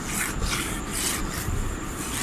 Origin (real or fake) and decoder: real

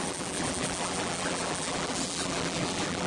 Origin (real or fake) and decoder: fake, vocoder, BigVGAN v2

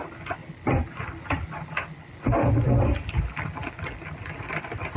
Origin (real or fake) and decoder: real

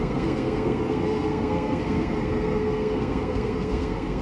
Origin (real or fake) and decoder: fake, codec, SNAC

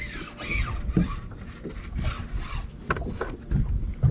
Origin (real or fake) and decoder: real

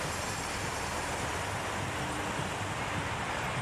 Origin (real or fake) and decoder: real